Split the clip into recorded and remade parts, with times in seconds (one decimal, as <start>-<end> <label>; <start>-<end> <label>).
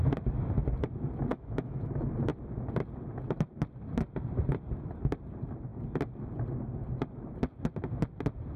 0.0-1.3 recorded; 1.3-1.9 remade; 1.9-8.6 recorded